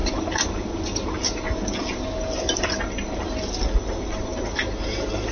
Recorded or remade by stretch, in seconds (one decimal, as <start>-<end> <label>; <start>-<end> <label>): 0.0-5.3 recorded